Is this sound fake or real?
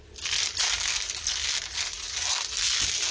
real